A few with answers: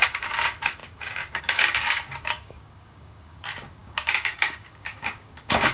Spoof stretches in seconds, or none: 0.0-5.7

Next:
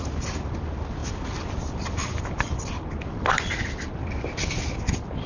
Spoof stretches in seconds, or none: none